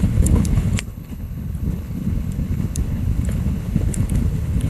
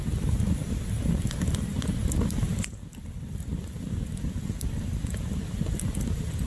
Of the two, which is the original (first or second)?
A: second